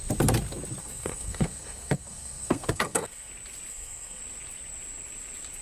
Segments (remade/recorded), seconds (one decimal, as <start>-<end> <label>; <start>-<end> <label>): 0.0-0.8 recorded; 0.8-3.3 remade; 3.3-3.7 recorded; 3.7-4.2 remade; 4.2-5.6 recorded